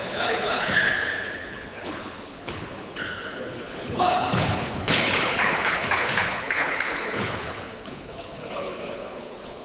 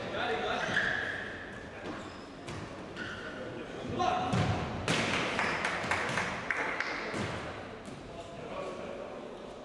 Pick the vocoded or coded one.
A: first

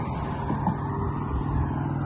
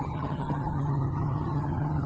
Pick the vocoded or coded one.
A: second